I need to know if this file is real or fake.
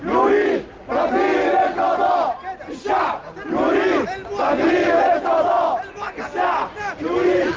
real